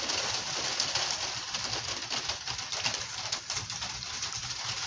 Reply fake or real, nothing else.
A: real